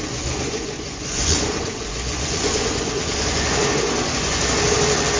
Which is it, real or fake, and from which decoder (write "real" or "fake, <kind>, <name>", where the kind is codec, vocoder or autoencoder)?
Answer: fake, vocoder, Vocos